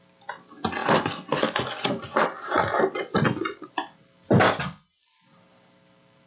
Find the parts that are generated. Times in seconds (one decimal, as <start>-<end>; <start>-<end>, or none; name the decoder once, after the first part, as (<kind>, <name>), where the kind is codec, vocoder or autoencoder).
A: none